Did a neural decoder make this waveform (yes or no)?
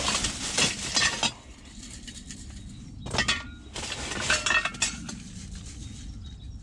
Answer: no